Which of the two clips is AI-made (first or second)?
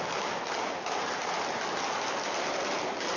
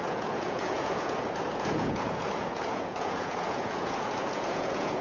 second